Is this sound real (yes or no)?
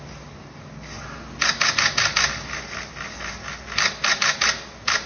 yes